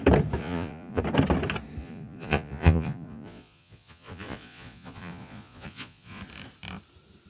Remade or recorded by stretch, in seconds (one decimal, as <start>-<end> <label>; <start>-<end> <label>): 0.0-0.4 recorded; 0.4-1.0 remade; 1.0-1.8 recorded; 1.8-6.2 remade; 6.2-7.3 recorded